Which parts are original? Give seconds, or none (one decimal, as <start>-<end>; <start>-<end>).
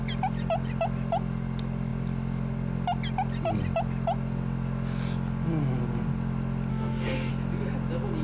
0.0-6.7; 7.3-8.2